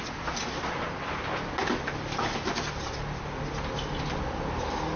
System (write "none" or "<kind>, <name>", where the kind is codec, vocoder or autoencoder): none